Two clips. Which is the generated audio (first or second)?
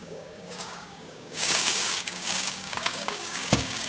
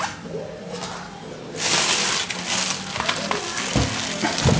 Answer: first